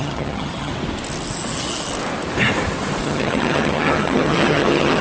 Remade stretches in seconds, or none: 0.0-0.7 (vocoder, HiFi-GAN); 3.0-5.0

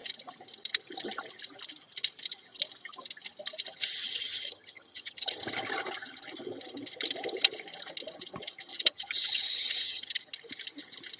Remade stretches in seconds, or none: 4.0-5.3 (vocoder, HiFi-GAN); 8.7-10.2

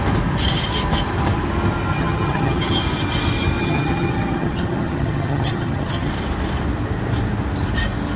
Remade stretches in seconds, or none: 1.9-2.8 (vocoder, HiFi-GAN); 3.6-6.1

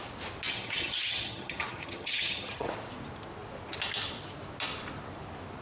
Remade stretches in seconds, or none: 0.5-2.7 (vocoder, HiFi-GAN)

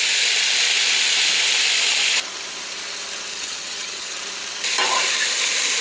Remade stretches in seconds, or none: 3.3-4.2 (vocoder, HiFi-GAN)

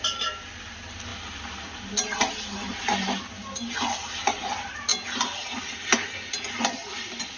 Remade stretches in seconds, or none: none

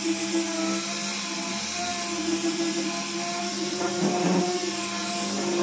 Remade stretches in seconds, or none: none

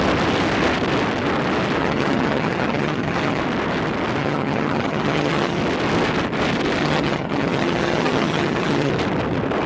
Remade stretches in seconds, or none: 1.8-3.4 (vocoder, HiFi-GAN); 4.2-5.6; 6.8-8.9